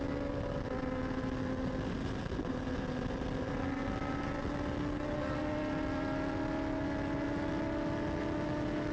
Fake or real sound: real